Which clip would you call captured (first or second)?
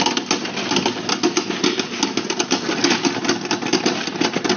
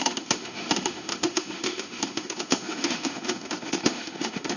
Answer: first